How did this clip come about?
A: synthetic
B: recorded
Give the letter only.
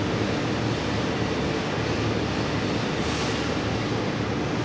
B